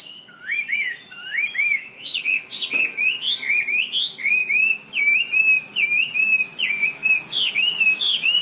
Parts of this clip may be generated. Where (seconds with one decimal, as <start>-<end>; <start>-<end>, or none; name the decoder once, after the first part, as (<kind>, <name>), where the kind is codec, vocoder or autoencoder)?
0.0-2.5 (autoencoder, DAC-VAE); 4.0-8.4